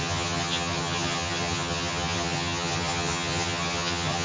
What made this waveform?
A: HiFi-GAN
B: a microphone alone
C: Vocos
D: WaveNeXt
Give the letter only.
A